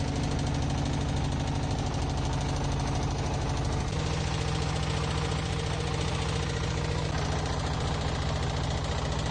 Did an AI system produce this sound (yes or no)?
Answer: no